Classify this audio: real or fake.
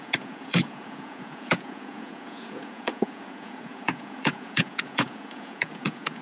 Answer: fake